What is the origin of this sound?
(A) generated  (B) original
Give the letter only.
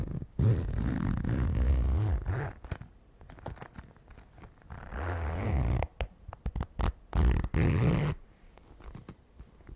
B